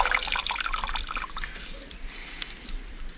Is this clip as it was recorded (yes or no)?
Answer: yes